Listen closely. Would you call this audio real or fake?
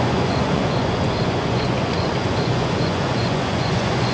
fake